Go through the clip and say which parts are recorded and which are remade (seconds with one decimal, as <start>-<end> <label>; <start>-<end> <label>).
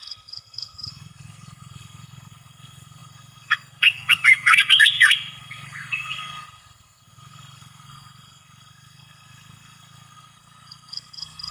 0.0-11.5 remade